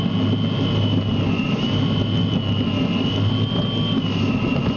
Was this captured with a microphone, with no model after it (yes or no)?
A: yes